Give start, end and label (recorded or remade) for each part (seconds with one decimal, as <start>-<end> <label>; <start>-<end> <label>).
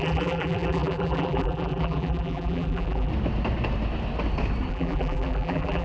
0.0-3.1 remade; 3.1-4.7 recorded; 4.7-5.8 remade